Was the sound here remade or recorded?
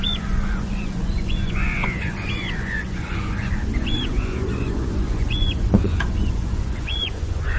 remade